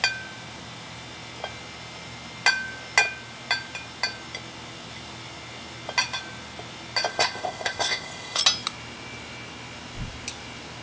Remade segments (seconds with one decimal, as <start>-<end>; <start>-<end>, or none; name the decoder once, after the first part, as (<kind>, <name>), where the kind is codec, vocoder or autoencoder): 7.1-8.4 (codec, ZipCodec)